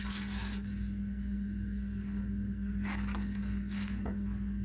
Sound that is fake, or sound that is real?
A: fake